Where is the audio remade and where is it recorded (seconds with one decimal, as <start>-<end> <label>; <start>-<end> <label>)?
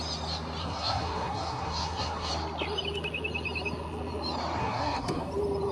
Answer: 0.0-0.6 recorded; 0.6-2.3 remade; 2.3-4.6 recorded; 4.6-5.3 remade; 5.3-5.7 recorded